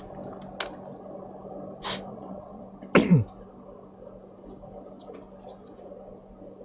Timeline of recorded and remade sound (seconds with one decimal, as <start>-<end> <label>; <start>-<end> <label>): 0.0-2.1 recorded; 2.1-2.6 remade; 2.6-6.6 recorded